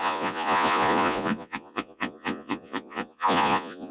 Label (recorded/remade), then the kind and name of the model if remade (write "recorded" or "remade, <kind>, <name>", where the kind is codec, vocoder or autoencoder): remade, vocoder, Vocos